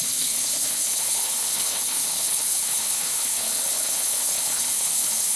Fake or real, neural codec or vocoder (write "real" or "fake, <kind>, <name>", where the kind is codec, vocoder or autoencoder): fake, codec, HILCodec